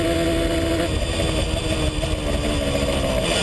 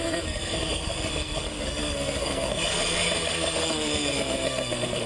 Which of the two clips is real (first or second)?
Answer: first